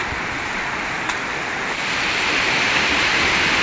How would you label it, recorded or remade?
remade